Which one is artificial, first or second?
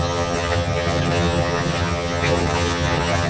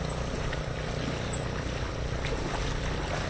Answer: first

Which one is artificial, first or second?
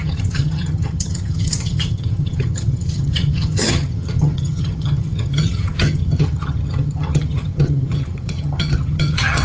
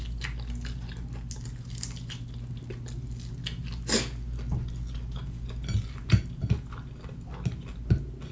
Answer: first